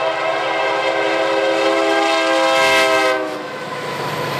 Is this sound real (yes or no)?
yes